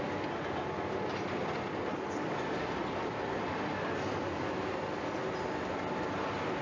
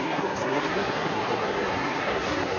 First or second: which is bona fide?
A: first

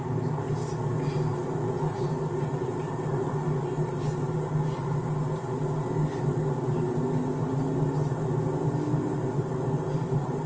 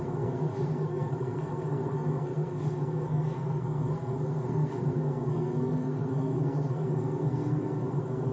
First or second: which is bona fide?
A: first